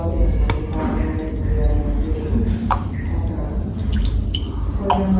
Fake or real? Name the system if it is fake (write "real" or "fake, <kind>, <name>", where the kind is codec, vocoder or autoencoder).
real